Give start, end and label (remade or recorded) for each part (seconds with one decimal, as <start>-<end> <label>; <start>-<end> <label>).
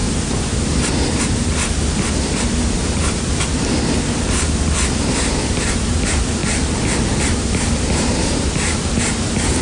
0.0-3.3 remade; 3.3-4.9 recorded; 4.9-6.4 remade; 6.4-7.2 recorded; 7.2-9.6 remade